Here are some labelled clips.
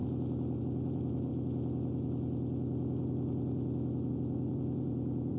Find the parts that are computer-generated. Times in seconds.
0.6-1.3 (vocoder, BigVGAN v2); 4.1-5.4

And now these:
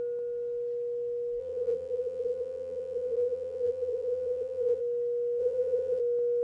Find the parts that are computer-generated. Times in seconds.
1.4-4.8 (vocoder, BigVGAN v2); 5.4-6.0

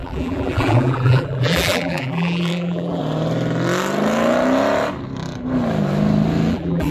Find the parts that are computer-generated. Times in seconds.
0.0-3.0 (vocoder, BigVGAN v2); 6.5-6.9

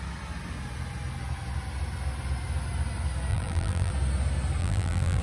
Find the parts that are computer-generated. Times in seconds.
3.3-3.9 (vocoder, BigVGAN v2); 4.6-5.2

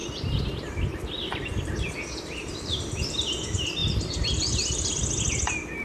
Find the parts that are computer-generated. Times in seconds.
0.0-3.0 (vocoder, BigVGAN v2); 3.8-4.9

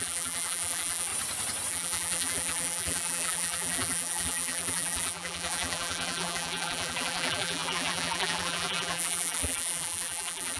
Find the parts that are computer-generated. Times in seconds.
0.0-1.1 (vocoder, BigVGAN v2); 1.7-10.6

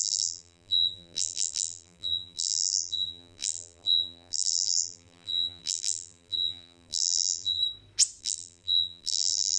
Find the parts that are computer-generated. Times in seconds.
0.0-7.6 (vocoder, BigVGAN v2); 8.2-9.6